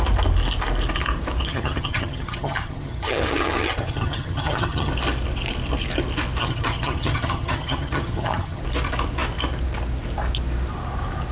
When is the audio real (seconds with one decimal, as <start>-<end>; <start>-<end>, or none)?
0.0-1.5; 4.9-6.4; 8.6-11.3